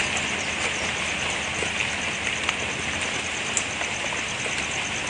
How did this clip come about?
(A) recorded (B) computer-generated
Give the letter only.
A